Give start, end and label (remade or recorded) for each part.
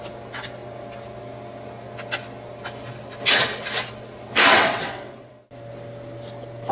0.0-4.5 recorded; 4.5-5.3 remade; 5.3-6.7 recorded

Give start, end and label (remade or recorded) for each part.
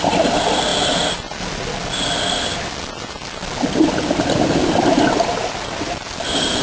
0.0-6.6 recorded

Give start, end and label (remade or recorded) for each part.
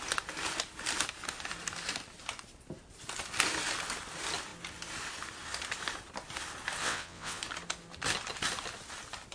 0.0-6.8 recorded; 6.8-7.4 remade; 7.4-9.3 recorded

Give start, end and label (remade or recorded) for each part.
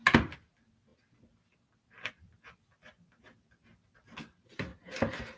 0.0-5.4 recorded